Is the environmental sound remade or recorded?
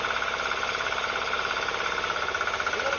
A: recorded